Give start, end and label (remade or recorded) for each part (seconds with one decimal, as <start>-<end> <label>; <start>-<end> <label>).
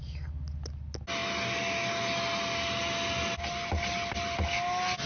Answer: 0.0-5.1 recorded